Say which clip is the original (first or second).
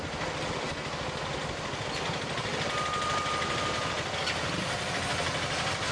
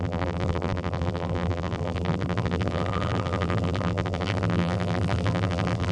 first